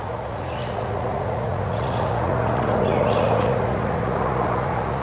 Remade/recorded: remade